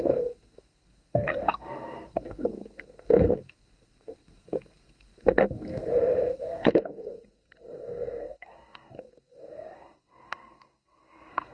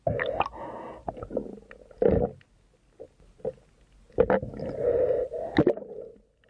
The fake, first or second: first